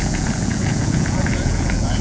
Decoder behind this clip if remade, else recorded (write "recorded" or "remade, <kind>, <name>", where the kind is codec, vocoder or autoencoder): remade, vocoder, Vocos